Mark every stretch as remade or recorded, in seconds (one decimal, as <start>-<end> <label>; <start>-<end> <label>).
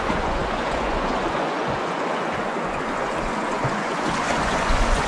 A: 0.0-5.1 remade